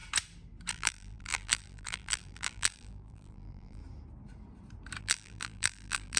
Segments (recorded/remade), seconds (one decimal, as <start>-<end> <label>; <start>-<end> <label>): 0.0-0.7 recorded; 0.7-3.8 remade; 3.8-5.0 recorded; 5.0-6.2 remade